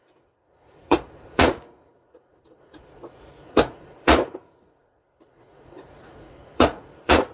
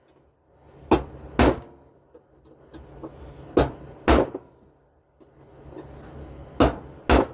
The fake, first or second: first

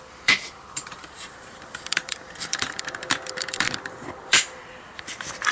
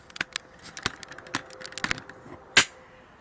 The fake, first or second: first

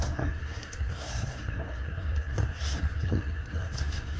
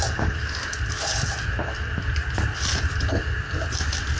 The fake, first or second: first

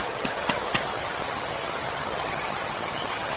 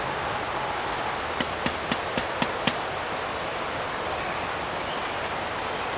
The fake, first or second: first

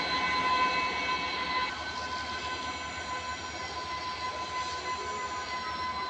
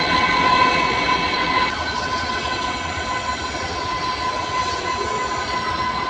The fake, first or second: second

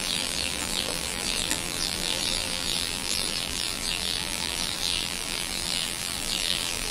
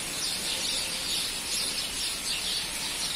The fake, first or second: first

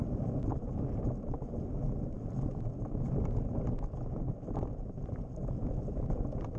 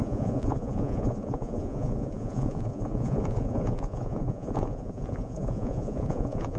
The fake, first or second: second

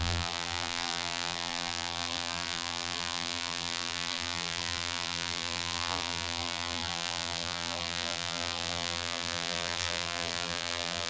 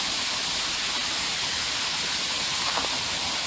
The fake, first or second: first